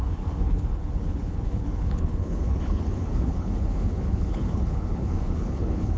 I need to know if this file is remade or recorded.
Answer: remade